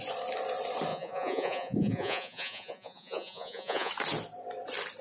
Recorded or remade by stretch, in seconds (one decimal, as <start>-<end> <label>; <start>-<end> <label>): 0.0-0.9 recorded; 0.9-3.9 remade; 3.9-5.0 recorded

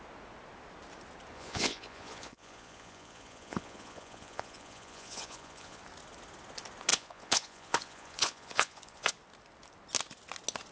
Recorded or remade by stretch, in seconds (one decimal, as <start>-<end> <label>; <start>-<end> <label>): 0.0-1.3 recorded; 1.3-5.8 remade; 5.8-6.9 recorded; 6.9-9.1 remade; 9.1-10.7 recorded

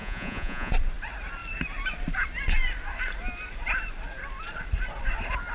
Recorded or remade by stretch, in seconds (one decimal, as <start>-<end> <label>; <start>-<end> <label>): 0.0-0.7 remade; 0.7-5.5 recorded

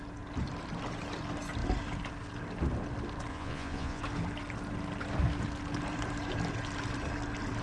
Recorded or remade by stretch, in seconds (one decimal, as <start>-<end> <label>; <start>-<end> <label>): 0.0-3.3 recorded; 3.3-4.0 remade; 4.0-7.6 recorded

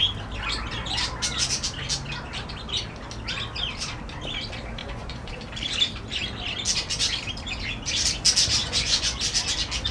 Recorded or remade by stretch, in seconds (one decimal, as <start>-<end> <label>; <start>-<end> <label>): 0.0-4.8 recorded; 4.8-5.3 remade; 5.3-8.6 recorded; 8.6-9.2 remade; 9.2-9.9 recorded